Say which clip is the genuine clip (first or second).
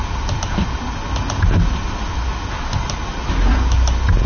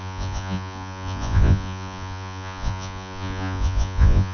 first